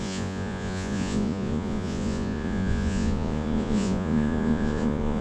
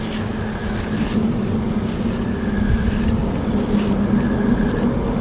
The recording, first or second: second